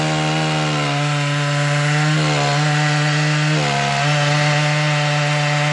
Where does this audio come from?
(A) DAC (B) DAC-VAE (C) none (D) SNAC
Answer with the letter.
C